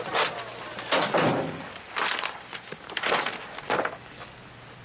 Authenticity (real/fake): real